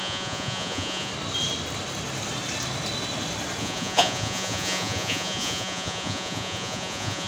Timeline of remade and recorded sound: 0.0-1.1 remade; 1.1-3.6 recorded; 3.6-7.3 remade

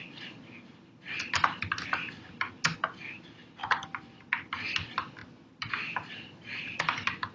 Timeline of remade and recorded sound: 0.0-7.3 recorded

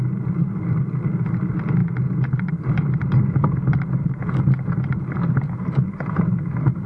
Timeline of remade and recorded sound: 0.0-6.9 recorded

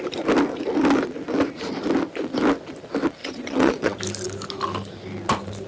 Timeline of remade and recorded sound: 0.0-3.2 recorded; 3.2-4.0 remade; 4.0-5.7 recorded

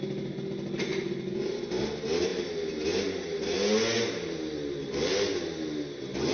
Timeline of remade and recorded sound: 0.0-6.3 recorded

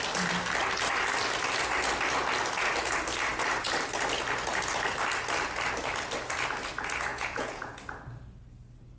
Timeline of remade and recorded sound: 0.0-7.1 recorded; 7.1-7.8 remade; 7.8-9.0 recorded

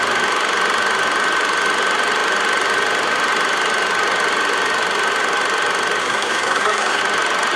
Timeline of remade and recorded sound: 0.0-6.0 recorded; 6.0-7.0 remade; 7.0-7.6 recorded

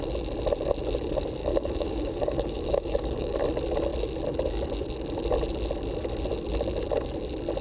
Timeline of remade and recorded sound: 0.0-1.4 recorded; 1.4-3.4 remade; 3.4-7.6 recorded